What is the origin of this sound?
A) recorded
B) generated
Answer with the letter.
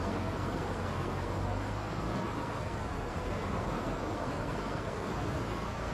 B